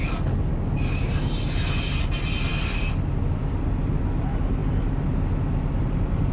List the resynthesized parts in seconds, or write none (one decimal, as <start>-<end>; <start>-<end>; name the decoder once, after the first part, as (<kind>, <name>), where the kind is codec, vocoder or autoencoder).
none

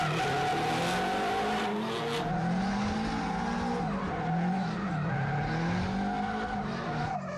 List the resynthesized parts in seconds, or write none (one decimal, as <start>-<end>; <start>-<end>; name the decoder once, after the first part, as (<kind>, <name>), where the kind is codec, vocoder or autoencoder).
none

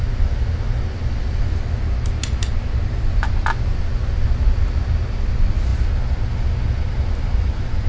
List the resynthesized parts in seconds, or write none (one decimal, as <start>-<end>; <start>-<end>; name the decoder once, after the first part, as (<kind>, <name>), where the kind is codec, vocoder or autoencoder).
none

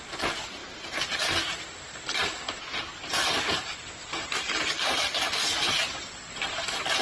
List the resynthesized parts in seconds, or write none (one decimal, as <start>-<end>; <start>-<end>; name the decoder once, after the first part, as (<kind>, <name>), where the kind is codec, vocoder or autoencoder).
0.6-2.6 (vocoder, BigVGAN v2); 3.2-6.2

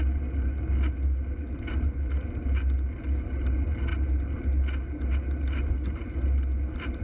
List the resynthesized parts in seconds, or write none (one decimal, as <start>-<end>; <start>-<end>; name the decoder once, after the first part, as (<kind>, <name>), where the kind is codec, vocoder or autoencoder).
none

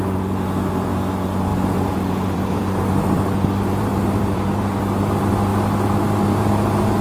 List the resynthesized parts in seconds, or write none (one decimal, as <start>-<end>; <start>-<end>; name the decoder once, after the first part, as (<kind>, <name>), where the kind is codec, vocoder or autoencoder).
1.5-5.0 (vocoder, BigVGAN v2)

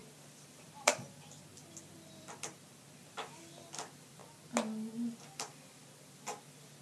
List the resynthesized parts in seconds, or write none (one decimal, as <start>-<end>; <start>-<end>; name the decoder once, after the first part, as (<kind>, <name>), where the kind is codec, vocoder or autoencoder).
0.0-4.2 (vocoder, BigVGAN v2); 5.2-6.8